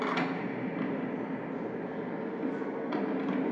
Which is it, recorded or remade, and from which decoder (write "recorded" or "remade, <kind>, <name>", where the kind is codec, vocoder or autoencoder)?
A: recorded